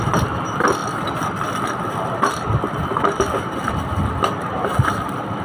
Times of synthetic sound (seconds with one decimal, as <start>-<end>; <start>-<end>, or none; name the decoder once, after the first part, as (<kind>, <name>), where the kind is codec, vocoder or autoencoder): 0.0-5.4 (vocoder, BigVGAN v2)